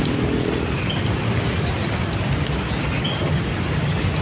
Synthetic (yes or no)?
no